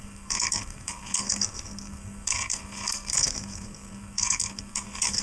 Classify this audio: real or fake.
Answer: fake